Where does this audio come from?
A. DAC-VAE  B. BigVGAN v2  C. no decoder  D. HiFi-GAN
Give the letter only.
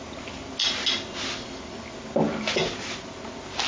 C